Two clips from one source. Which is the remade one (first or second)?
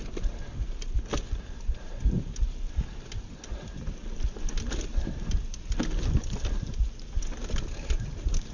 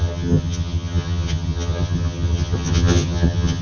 second